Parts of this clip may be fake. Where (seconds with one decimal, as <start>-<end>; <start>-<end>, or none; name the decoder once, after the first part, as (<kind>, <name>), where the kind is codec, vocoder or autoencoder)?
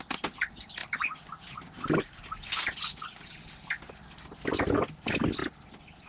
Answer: none